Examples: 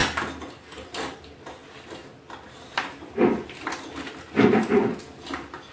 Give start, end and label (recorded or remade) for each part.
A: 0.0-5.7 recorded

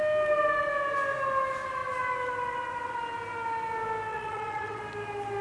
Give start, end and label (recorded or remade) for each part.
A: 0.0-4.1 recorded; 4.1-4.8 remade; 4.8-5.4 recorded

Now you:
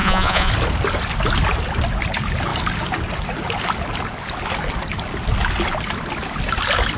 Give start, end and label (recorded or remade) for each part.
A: 0.0-0.5 remade; 0.5-7.0 recorded

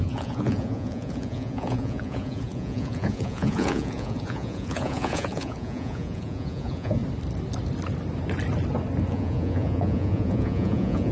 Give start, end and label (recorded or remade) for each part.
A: 0.0-7.0 remade; 7.0-9.1 recorded; 9.1-11.1 remade